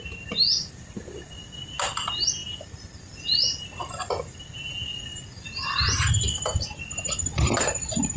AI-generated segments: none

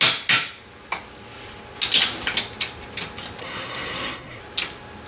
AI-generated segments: 3.4-4.4 (codec, SNAC)